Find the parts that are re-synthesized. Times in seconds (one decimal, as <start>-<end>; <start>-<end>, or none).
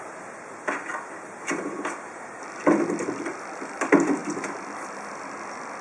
0.0-0.9; 3.3-5.8